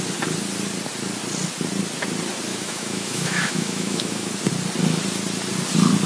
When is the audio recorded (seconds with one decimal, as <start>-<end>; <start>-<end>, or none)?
0.0-2.5; 4.3-6.1